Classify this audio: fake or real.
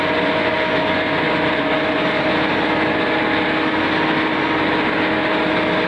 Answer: real